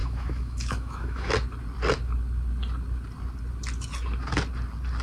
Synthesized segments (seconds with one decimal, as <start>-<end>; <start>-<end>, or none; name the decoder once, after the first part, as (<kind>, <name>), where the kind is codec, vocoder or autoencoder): 0.0-1.3 (autoencoder, DAC-VAE)